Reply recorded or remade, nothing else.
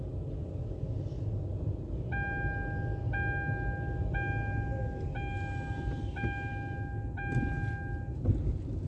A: recorded